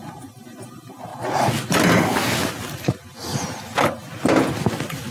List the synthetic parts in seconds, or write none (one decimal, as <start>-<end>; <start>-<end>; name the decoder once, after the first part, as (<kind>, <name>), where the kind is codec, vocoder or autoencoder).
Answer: none